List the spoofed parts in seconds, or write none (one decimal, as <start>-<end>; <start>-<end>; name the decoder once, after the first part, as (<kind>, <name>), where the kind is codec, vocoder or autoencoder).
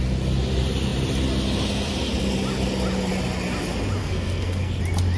4.0-4.8 (codec, SNAC)